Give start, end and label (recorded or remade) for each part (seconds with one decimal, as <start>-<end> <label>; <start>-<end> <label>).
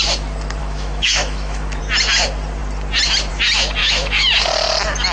0.0-0.6 recorded; 0.6-1.8 remade; 1.8-3.8 recorded; 3.8-4.3 remade; 4.3-5.1 recorded